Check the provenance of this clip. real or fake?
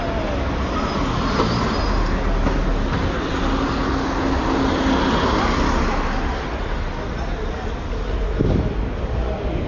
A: real